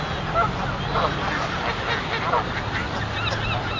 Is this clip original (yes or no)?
yes